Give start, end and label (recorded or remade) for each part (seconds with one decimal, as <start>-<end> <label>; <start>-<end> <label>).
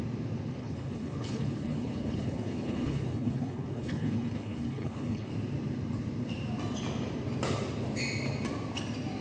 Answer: 0.0-0.6 recorded; 0.6-5.3 remade; 5.3-9.2 recorded